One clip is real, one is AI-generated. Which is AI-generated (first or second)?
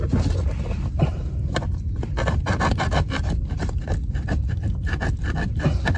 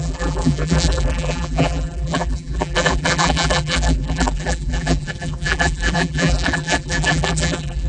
second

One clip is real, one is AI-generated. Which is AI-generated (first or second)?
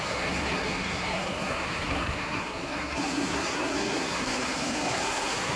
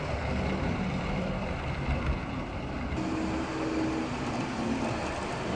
first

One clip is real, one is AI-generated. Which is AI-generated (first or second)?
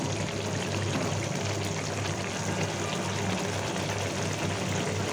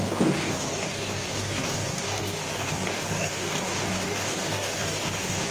second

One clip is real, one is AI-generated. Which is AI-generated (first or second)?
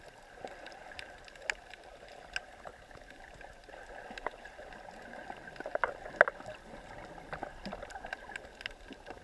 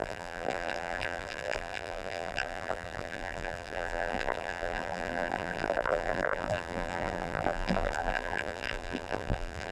second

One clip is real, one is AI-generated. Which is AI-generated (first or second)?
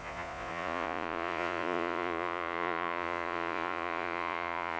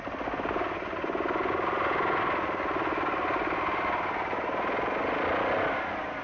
first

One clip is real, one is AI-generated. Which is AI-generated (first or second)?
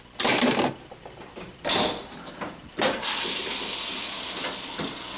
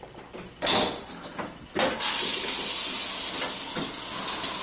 first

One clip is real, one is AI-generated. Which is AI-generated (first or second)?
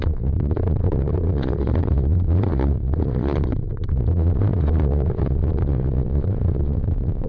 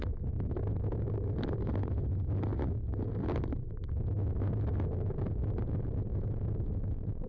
first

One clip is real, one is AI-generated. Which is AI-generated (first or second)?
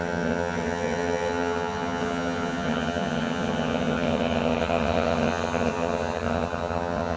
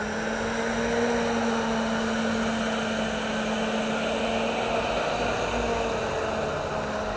first